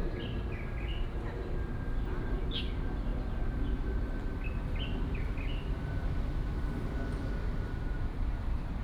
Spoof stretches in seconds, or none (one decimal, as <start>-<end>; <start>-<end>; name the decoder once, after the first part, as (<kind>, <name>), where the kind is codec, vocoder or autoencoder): none